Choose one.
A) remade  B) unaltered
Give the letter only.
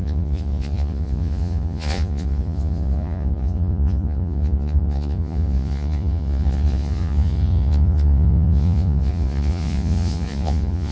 A